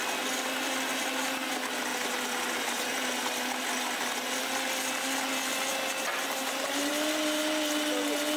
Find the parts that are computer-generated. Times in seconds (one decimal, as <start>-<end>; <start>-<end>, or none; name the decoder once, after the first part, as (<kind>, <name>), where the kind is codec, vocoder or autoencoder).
none